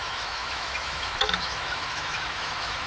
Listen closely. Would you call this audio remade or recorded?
remade